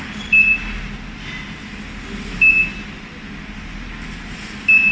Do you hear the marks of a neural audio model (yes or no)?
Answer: no